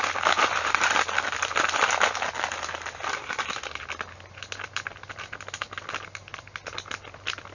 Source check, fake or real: real